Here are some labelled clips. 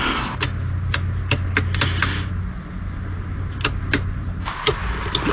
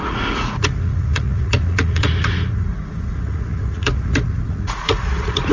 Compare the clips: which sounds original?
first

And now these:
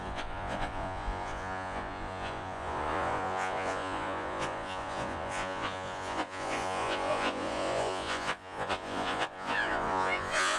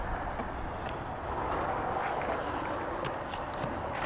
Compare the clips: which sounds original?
second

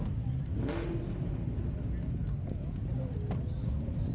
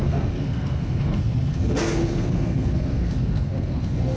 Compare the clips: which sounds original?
first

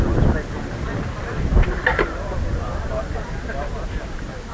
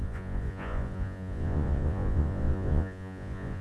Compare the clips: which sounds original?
first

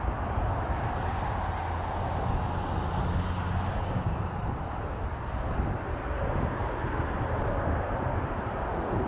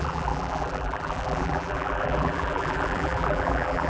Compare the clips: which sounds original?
first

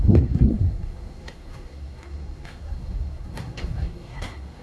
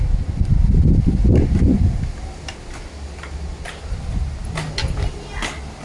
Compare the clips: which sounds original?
second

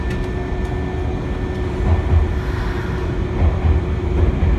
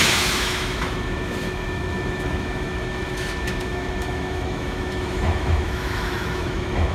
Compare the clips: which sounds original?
first